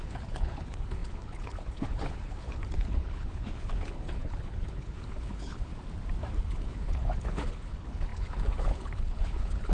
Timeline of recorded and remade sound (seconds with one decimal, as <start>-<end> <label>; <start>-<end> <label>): 0.0-5.7 remade; 5.7-6.4 recorded; 6.4-9.7 remade